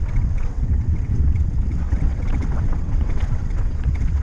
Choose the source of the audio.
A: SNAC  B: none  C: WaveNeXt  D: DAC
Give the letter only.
C